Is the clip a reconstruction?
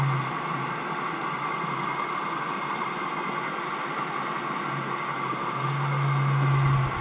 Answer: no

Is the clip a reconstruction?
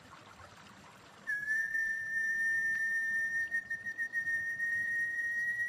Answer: yes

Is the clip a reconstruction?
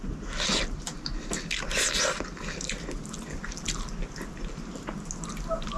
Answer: no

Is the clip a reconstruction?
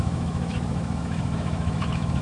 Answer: yes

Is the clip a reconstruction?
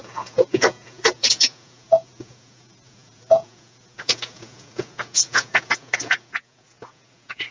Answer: yes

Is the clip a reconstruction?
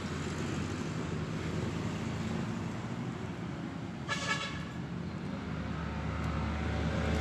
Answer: no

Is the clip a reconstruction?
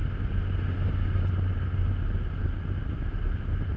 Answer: no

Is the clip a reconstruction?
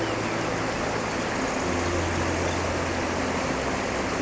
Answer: no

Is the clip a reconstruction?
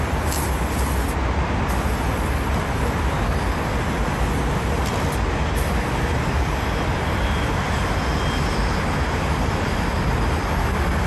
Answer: no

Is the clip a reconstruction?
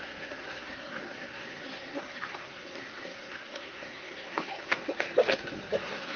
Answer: yes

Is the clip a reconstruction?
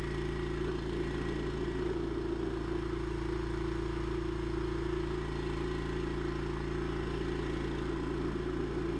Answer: no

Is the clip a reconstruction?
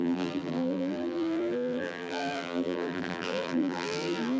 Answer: yes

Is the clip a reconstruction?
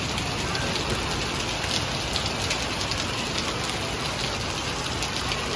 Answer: no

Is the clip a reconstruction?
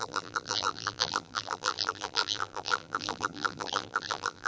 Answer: yes